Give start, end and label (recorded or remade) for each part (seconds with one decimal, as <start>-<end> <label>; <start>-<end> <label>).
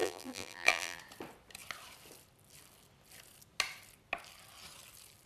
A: 0.0-1.0 remade; 1.0-5.3 recorded